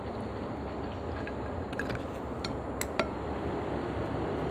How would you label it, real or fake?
real